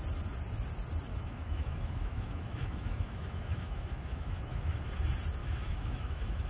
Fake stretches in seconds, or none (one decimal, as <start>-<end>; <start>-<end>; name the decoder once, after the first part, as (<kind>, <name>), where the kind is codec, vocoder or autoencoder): 1.1-5.0 (autoencoder, DAC-VAE); 5.4-6.5